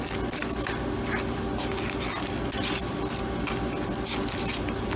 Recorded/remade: recorded